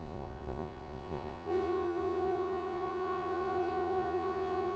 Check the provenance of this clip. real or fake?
fake